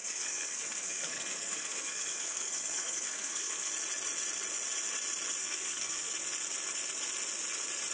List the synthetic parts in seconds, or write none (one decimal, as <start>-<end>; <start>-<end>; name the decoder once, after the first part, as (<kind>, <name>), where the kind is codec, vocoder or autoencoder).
0.0-3.7 (codec, SNAC); 5.4-6.1